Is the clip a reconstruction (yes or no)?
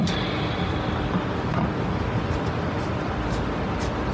no